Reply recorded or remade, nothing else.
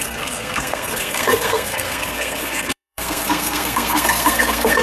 remade